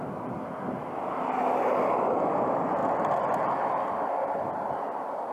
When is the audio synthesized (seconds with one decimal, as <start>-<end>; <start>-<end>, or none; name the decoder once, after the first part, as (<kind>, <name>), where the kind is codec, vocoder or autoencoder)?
none